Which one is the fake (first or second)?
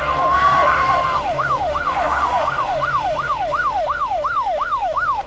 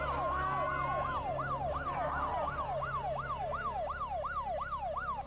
first